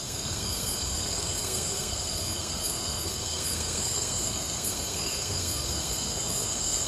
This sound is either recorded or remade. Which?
remade